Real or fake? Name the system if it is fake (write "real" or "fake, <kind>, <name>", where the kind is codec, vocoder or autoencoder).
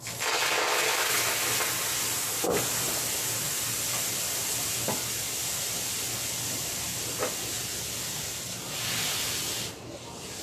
real